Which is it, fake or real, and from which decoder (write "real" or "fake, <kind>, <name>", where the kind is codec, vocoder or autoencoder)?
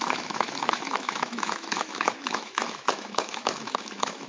fake, autoencoder, DAC-VAE